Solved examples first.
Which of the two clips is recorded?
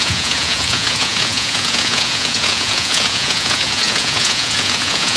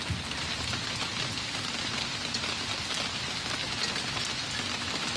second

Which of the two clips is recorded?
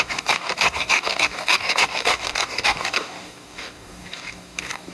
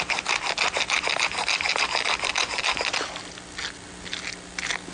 second